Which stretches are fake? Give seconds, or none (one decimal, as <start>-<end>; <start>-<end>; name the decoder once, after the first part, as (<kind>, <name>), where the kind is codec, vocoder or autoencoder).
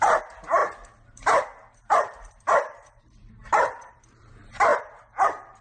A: 0.0-5.6 (vocoder, BigVGAN v2)